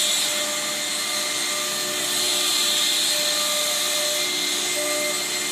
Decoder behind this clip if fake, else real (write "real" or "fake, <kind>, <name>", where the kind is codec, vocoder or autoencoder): real